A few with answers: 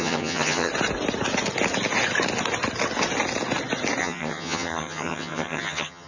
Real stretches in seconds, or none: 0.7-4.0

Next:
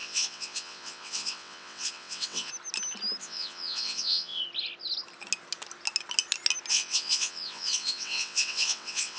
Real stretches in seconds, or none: 2.5-3.2; 4.4-6.7

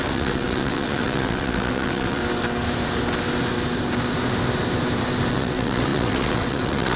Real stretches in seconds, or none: 2.2-5.3

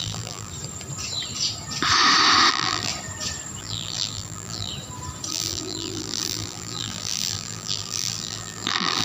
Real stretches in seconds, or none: 0.5-2.5; 2.9-3.6; 4.7-5.3